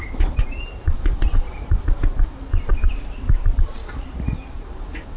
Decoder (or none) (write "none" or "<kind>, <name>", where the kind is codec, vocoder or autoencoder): vocoder, BigVGAN v2